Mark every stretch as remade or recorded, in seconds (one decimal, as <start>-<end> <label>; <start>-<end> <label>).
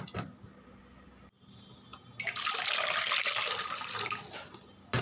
0.0-5.0 recorded